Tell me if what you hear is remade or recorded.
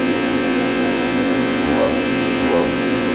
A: remade